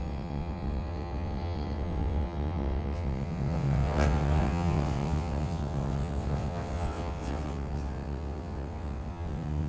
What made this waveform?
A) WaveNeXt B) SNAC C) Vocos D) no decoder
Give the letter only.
A